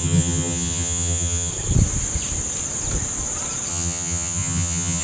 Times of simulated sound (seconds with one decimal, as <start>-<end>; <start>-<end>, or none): 0.0-1.5; 3.7-5.0